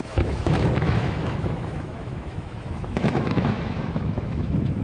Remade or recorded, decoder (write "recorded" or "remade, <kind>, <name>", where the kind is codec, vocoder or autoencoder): remade, autoencoder, DAC-VAE